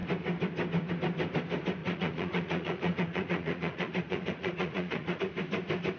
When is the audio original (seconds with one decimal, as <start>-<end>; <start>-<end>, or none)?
0.0-1.8; 5.2-6.0

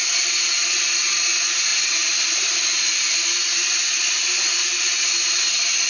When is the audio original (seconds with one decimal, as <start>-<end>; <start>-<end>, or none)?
0.0-5.9

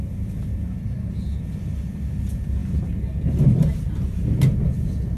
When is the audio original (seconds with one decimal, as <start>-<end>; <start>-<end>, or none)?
0.0-5.2

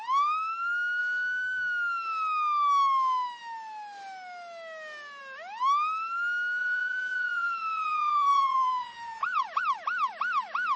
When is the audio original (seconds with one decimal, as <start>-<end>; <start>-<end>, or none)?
0.0-6.6; 9.6-10.8